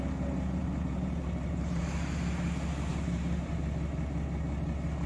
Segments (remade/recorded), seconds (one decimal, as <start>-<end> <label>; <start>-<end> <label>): 0.0-0.6 recorded; 0.6-1.8 remade; 1.8-2.9 recorded; 2.9-3.5 remade; 3.5-5.1 recorded